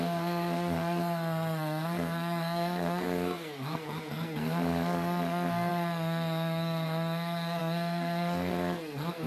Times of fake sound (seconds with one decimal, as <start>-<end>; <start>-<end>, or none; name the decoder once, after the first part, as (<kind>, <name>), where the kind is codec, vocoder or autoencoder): 0.0-9.3 (codec, SNAC)